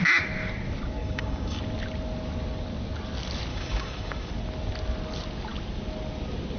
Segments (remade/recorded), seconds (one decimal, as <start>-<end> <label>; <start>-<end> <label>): 0.0-1.0 recorded; 1.0-1.6 remade; 1.6-3.5 recorded; 3.5-4.3 remade; 4.3-6.6 recorded